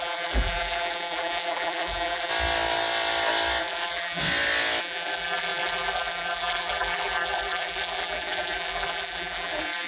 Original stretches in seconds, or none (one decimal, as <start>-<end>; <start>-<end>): 2.3-3.6; 4.2-4.8